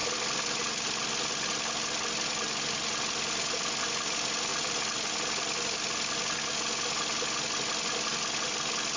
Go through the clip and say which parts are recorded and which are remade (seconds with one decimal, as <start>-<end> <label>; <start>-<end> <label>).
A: 0.0-9.0 recorded